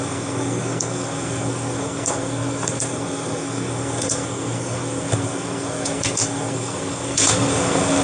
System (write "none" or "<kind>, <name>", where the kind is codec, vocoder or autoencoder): codec, SNAC